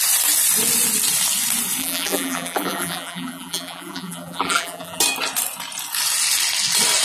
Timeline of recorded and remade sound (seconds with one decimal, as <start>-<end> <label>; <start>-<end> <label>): 0.0-1.8 recorded; 1.8-5.0 remade; 5.0-7.0 recorded

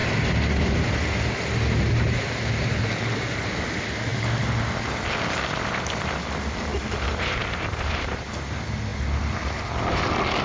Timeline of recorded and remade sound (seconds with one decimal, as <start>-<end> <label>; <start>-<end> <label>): 0.0-6.7 recorded; 6.7-8.3 remade; 8.3-10.4 recorded

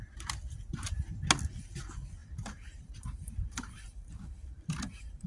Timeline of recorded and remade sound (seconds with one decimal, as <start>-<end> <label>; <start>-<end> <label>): 0.0-2.2 recorded; 2.2-5.3 remade

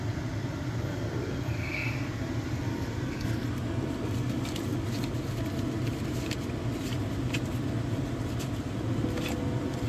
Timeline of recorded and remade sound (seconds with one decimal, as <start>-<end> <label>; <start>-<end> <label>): 0.0-9.9 recorded